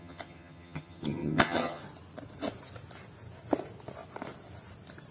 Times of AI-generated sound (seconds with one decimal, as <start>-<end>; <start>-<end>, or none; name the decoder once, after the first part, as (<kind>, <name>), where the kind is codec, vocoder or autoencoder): 0.0-1.8 (vocoder, HiFi-GAN)